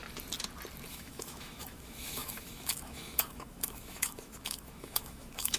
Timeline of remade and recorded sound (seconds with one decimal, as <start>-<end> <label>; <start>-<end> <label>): 0.0-0.9 recorded; 0.9-5.6 remade